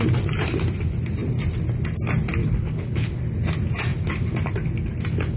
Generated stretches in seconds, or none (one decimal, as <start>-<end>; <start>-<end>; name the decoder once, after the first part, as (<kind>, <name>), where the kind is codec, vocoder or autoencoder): 2.4-3.2 (codec, HILCodec)